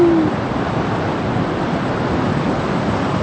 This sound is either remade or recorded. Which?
recorded